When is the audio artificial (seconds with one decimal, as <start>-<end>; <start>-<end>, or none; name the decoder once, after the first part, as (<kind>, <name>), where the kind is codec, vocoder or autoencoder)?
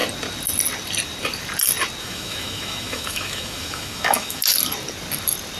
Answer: 2.0-4.4 (autoencoder, DAC-VAE)